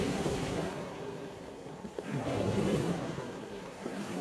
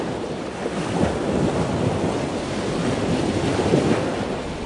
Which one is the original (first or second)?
second